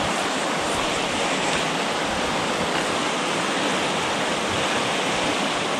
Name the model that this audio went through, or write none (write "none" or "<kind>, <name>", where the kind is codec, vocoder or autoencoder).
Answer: none